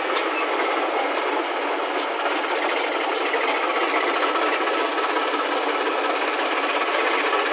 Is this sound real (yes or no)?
yes